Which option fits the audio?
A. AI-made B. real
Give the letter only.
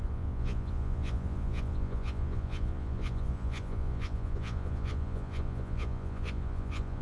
A